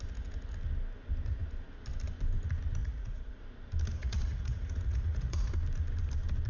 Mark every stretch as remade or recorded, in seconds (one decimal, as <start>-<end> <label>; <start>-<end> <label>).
0.0-2.8 recorded; 2.8-3.4 remade; 3.4-4.0 recorded; 4.0-5.5 remade; 5.5-6.5 recorded